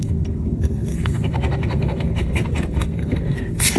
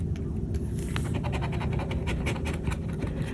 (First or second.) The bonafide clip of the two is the second